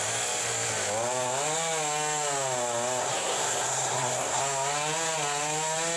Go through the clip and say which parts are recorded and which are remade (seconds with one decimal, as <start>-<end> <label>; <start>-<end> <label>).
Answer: 0.0-3.0 recorded; 3.0-4.4 remade; 4.4-6.0 recorded